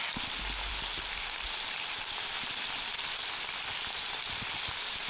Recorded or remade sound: recorded